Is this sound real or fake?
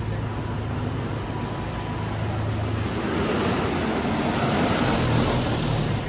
real